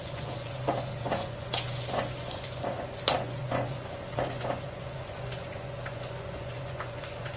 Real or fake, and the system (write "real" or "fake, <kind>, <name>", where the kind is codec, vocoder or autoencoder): fake, vocoder, Vocos